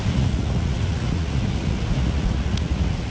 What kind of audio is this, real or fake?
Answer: fake